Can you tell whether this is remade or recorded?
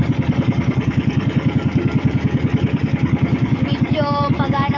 remade